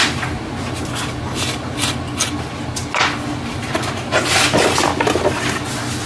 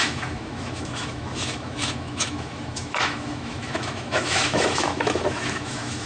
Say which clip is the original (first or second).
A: first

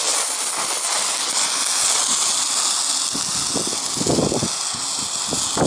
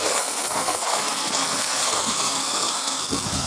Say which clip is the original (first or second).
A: first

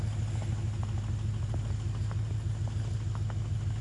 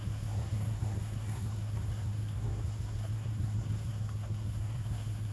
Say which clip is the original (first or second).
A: first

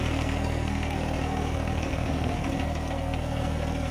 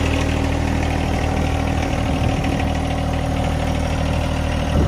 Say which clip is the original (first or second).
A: second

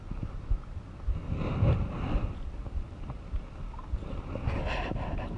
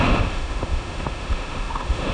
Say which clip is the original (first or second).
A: first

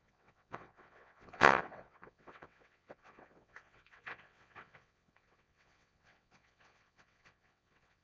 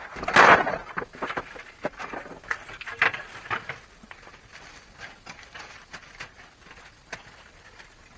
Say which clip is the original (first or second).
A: second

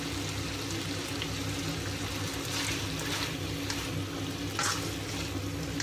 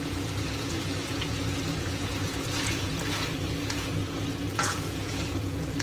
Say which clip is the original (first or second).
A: first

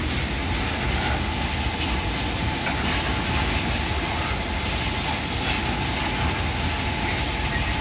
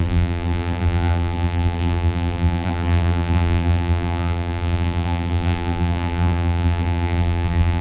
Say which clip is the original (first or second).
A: first